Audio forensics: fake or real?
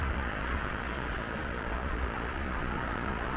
fake